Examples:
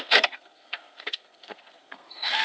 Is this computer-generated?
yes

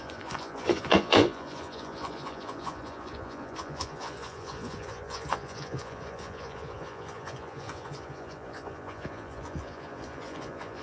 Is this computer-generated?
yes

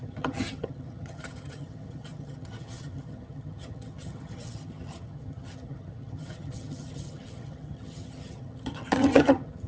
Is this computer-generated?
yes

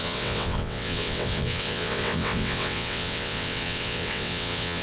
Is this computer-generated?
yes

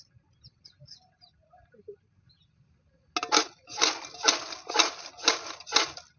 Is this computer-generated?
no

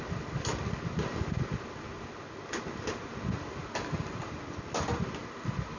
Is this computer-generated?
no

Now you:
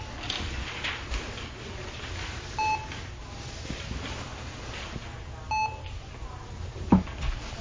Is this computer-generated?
no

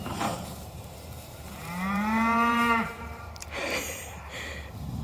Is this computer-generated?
yes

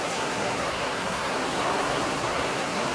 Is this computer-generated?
yes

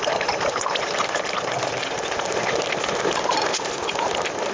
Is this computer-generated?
no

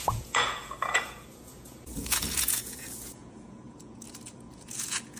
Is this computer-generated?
yes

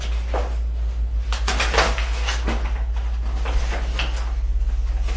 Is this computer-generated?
no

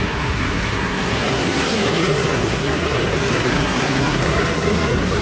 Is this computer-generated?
yes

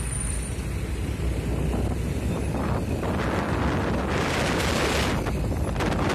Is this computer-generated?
no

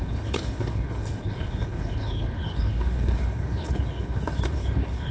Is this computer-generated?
yes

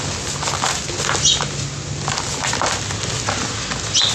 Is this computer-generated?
no